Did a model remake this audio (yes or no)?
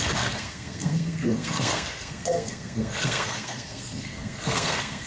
yes